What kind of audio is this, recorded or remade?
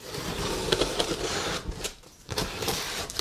remade